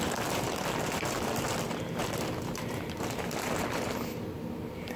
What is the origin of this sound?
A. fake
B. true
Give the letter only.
A